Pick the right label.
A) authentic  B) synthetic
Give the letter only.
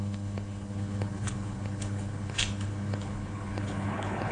B